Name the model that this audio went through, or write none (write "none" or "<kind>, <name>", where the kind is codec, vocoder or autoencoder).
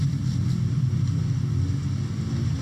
none